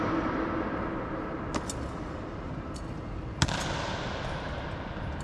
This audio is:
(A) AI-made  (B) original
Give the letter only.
B